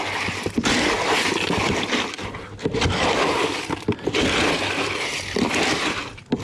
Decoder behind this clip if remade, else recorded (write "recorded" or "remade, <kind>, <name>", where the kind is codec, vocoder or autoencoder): recorded